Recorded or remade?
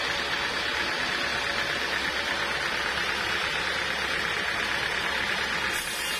recorded